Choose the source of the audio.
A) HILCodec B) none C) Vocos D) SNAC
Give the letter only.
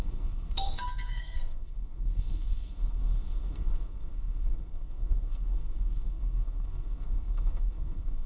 D